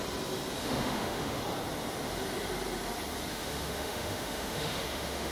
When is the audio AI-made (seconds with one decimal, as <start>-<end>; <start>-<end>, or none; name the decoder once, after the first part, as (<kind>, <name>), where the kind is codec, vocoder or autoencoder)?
0.6-1.4 (autoencoder, DAC-VAE); 3.3-5.3